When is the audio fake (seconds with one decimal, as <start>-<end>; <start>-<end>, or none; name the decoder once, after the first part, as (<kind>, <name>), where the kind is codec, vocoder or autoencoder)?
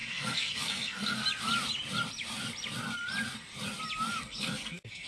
0.0-1.2 (codec, SNAC); 4.2-5.1